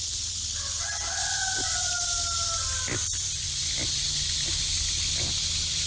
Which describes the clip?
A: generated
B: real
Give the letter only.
B